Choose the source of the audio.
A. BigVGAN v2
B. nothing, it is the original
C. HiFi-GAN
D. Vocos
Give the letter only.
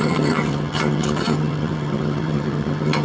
C